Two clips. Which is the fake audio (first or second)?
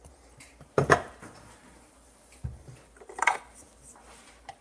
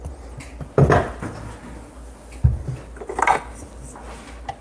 first